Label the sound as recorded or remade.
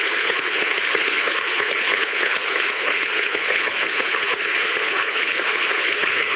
remade